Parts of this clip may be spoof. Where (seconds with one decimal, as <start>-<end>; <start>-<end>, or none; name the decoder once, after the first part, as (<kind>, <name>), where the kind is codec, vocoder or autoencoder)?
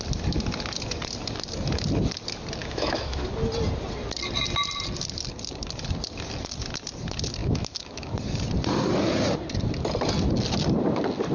2.6-3.3 (autoencoder, DAC-VAE); 7.4-8.1